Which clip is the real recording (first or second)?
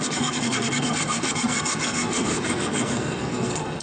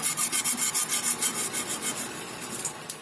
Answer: second